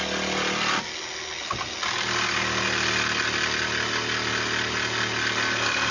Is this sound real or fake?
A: real